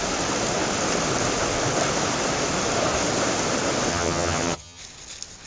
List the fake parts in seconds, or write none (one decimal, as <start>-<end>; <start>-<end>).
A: 3.9-4.8